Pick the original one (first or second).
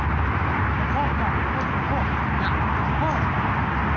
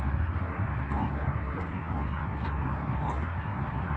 first